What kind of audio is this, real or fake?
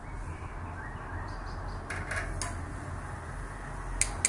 real